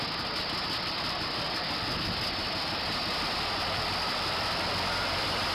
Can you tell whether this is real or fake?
real